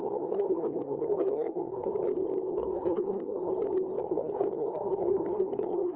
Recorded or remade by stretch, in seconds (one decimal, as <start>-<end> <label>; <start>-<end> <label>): 0.0-1.9 remade; 1.9-2.5 recorded; 2.5-3.5 remade; 3.5-4.0 recorded; 4.0-6.0 remade

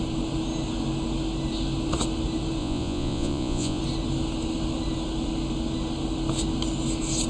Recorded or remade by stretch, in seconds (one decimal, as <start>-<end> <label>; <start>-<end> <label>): 0.0-2.6 recorded; 2.6-3.8 remade; 3.8-7.3 recorded

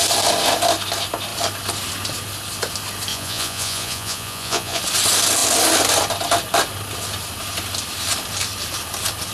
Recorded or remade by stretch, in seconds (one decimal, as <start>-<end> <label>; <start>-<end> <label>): 0.0-3.1 recorded; 3.1-4.8 remade; 4.8-9.3 recorded

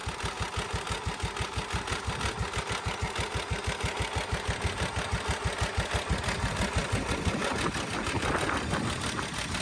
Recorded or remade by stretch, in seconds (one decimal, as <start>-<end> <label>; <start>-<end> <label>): 0.0-9.6 recorded

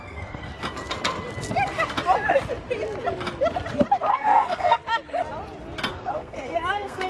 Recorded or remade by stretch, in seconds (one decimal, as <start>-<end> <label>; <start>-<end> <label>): 0.0-0.5 remade; 0.5-4.1 recorded; 4.1-4.8 remade; 4.8-5.9 recorded; 5.9-7.1 remade